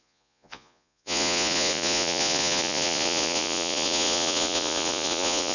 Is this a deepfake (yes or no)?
yes